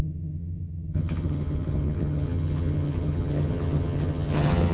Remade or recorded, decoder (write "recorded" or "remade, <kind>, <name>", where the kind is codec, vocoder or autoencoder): remade, vocoder, HiFi-GAN